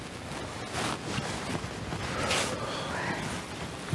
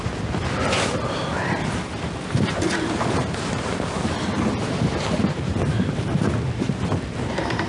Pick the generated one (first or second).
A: second